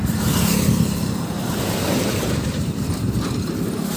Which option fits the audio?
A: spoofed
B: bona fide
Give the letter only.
A